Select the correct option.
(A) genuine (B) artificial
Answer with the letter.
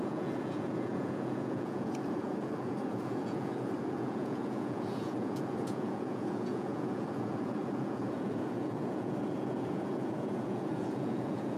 B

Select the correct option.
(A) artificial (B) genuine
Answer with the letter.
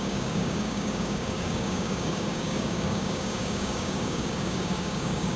A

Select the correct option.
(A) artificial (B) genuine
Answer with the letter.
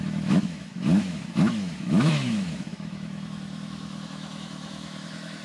A